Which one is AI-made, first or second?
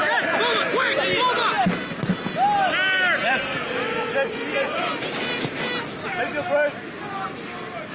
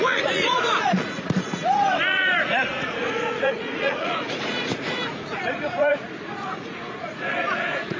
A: second